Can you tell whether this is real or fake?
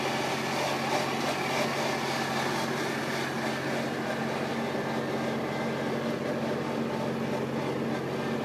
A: real